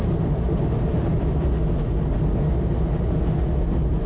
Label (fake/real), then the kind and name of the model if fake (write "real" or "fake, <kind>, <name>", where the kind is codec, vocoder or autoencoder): real